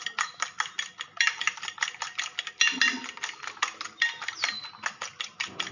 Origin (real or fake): real